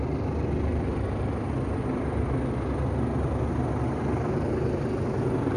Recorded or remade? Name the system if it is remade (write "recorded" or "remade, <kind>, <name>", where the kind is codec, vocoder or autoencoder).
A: recorded